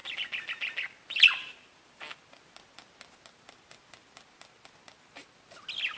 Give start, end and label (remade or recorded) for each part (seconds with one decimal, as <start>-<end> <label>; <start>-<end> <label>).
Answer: 0.0-6.0 recorded